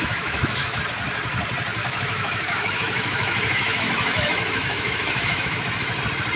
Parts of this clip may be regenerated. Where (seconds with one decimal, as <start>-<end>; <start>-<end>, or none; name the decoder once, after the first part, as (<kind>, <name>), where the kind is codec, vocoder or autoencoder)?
0.0-0.8 (autoencoder, DAC-VAE); 1.8-5.6